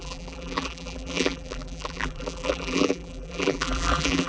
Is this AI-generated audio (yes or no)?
yes